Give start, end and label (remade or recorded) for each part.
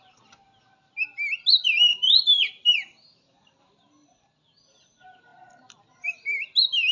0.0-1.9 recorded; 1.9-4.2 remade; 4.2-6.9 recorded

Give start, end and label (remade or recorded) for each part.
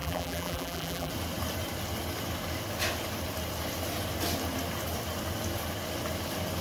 0.0-1.1 remade; 1.1-6.6 recorded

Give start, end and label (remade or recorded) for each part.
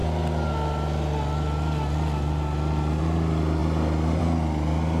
0.0-5.0 recorded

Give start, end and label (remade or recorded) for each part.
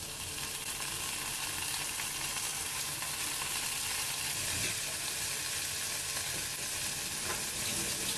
0.0-2.5 recorded; 2.5-3.1 remade; 3.1-8.2 recorded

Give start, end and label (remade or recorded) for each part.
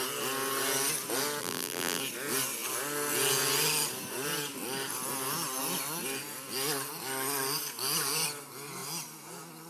0.0-1.4 recorded; 1.4-2.0 remade; 2.0-9.7 recorded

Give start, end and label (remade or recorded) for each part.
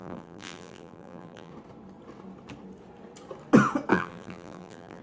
0.0-1.5 remade; 1.5-3.9 recorded; 3.9-5.0 remade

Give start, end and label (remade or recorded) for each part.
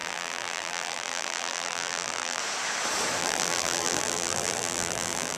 0.0-2.4 remade; 2.4-3.2 recorded; 3.2-5.4 remade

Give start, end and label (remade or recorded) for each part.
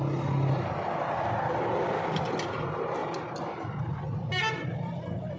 0.0-5.4 recorded